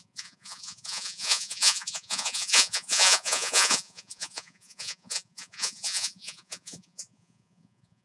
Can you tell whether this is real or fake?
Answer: fake